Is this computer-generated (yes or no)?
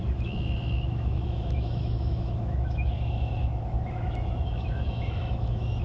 yes